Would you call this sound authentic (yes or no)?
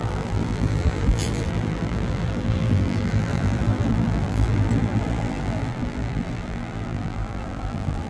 no